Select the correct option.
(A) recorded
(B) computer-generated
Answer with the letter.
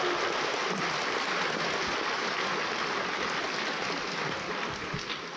A